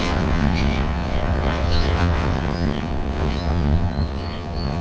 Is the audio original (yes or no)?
no